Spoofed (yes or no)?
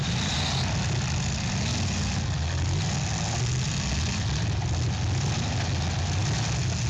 no